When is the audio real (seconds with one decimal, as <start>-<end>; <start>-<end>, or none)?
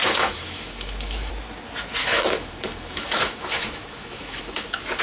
1.3-2.0